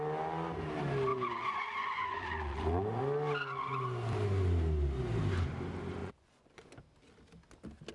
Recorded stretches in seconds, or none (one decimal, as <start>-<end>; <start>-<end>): 0.0-1.1; 3.0-6.0; 6.7-7.9